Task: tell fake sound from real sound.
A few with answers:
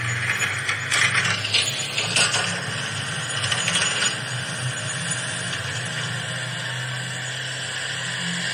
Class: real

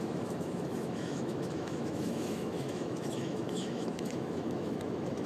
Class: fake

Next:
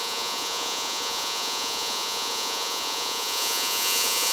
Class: fake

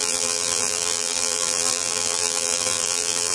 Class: fake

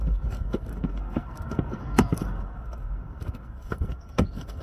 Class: fake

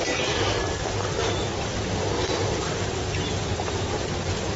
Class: real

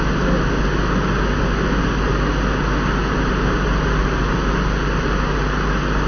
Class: real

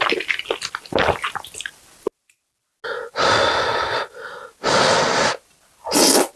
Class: real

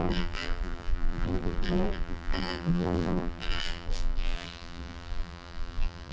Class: fake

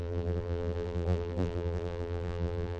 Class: fake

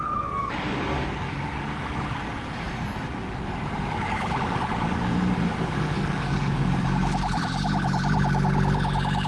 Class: fake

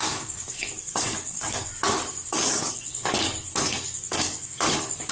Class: fake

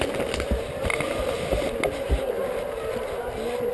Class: real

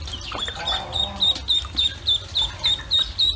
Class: real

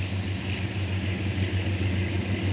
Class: real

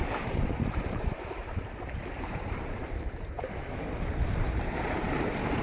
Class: fake